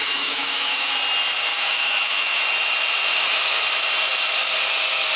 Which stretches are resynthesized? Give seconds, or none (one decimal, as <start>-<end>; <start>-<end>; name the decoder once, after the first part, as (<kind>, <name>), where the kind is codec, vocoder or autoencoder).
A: 0.0-0.9 (autoencoder, DAC-VAE); 1.5-2.4